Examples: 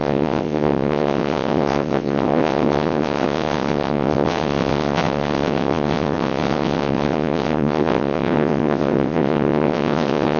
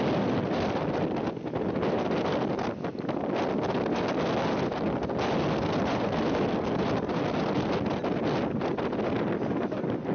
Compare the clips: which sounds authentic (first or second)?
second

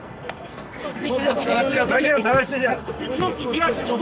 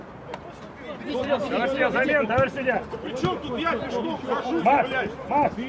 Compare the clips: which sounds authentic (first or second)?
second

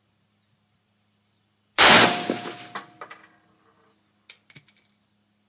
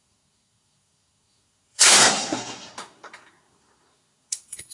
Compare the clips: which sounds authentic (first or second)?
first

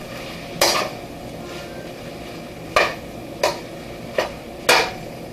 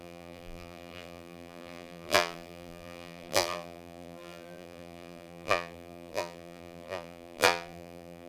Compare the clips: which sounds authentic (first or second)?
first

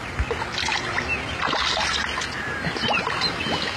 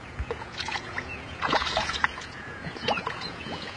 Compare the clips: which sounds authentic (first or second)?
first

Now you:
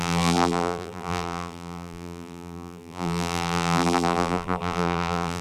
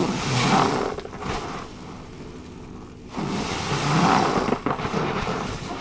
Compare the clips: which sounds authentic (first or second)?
second